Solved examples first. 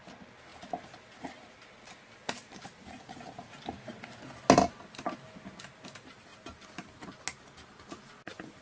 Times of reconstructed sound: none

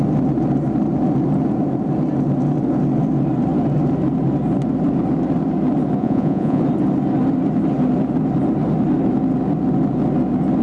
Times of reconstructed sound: 6.0-6.6 (vocoder, Vocos)

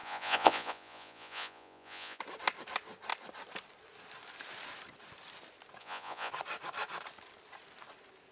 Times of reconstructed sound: 0.0-2.2 (vocoder, Vocos); 5.8-6.3

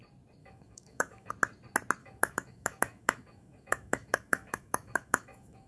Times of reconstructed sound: 0.4-1.3 (autoencoder, DAC-VAE); 2.0-5.7

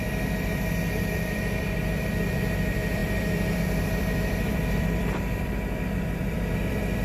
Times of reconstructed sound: 0.0-7.0 (vocoder, BigVGAN v2)

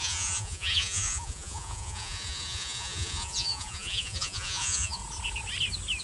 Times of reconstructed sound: 0.0-5.0 (vocoder, Vocos)